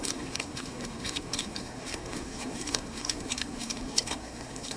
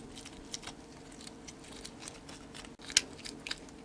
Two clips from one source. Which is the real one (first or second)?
second